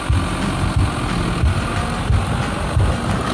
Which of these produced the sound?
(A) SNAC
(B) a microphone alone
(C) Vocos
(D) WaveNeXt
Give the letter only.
B